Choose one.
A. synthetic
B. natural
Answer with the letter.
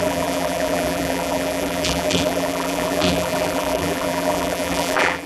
A